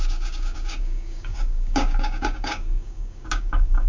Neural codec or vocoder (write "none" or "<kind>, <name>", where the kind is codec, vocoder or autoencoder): codec, DAC